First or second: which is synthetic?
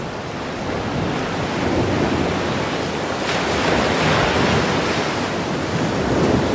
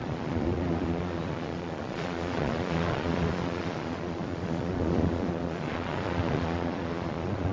second